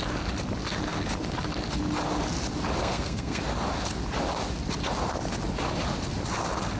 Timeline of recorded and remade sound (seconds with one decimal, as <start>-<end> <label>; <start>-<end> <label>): 0.0-2.8 recorded; 2.8-3.4 remade; 3.4-6.8 recorded